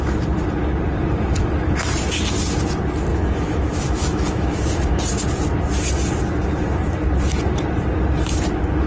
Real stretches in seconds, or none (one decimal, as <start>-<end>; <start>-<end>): 0.0-3.1; 5.0-8.9